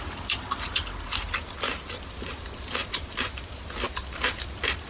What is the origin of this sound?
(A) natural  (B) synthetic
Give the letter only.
B